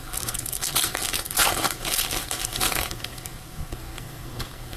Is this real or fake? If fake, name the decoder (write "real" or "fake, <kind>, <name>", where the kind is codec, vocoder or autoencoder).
fake, codec, SNAC